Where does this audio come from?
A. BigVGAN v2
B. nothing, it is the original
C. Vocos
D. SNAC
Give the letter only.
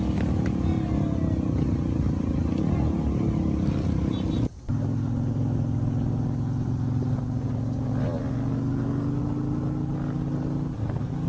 B